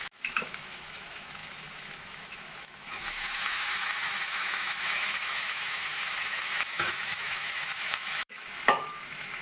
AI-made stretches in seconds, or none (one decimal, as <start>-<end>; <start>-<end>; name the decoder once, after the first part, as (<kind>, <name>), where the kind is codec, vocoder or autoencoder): 0.0-9.4 (autoencoder, DAC-VAE)